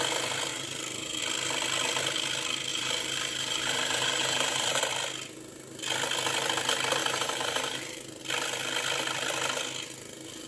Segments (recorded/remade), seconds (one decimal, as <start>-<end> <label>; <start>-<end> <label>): 0.0-0.5 recorded; 0.5-1.2 remade; 1.2-2.7 recorded; 2.7-4.9 remade; 4.9-7.0 recorded; 7.0-8.2 remade; 8.2-10.5 recorded